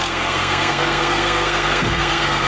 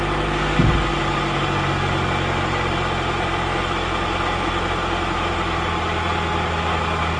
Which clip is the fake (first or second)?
first